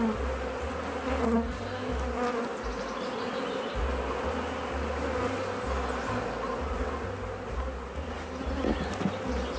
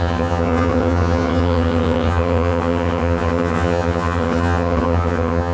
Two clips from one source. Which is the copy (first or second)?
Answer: second